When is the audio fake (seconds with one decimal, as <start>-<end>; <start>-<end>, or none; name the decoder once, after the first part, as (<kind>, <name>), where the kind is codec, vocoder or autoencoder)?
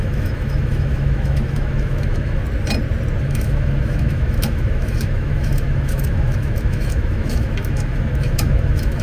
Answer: 0.0-2.4 (autoencoder, DAC-VAE); 3.2-9.0